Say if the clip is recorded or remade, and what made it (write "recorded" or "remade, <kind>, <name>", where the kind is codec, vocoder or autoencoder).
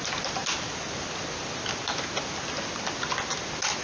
recorded